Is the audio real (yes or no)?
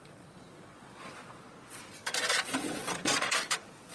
no